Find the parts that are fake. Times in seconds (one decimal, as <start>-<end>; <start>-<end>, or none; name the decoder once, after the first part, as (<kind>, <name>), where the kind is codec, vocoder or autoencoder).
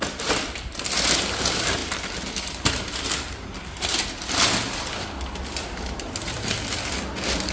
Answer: 0.0-3.9 (vocoder, BigVGAN v2); 5.5-7.5